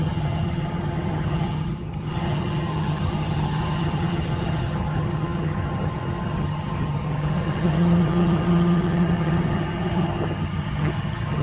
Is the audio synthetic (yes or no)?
yes